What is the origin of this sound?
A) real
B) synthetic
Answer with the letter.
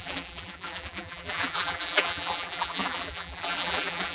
B